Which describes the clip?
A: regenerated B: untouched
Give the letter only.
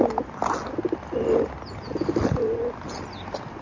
B